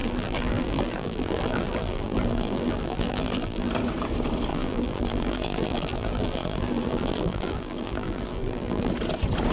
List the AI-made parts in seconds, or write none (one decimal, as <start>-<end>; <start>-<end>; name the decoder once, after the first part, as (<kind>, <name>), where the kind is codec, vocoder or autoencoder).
0.0-3.7 (vocoder, BigVGAN v2); 4.5-8.9